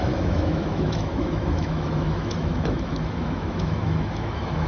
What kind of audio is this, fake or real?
fake